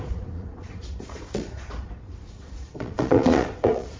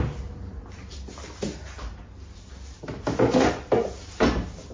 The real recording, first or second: second